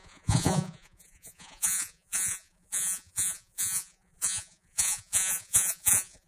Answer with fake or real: fake